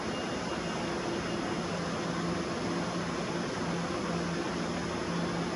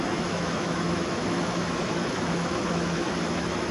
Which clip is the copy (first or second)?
second